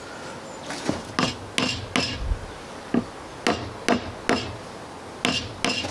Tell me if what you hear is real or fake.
real